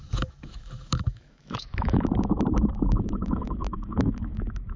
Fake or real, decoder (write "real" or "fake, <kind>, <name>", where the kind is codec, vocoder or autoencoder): fake, autoencoder, DAC-VAE